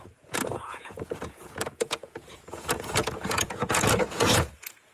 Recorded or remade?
remade